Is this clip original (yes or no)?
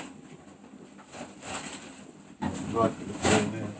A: yes